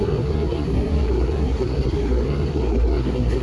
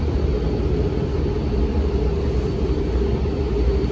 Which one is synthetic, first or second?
first